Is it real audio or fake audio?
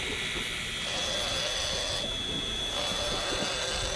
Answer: real